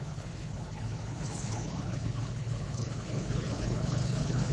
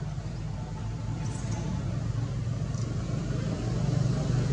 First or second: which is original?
second